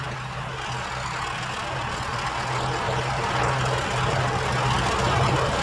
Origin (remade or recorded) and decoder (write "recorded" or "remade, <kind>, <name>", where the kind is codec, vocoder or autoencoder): recorded